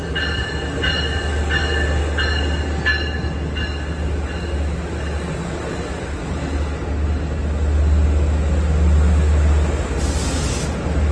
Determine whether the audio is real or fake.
real